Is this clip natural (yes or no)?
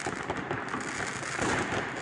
yes